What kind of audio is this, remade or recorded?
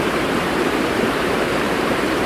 remade